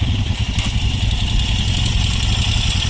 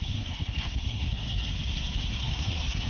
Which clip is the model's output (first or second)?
second